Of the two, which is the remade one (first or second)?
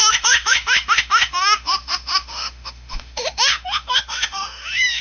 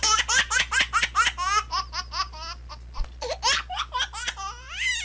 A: first